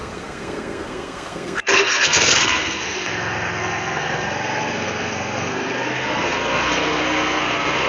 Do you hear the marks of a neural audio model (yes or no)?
yes